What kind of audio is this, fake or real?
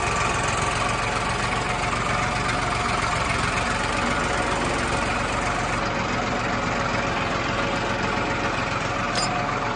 real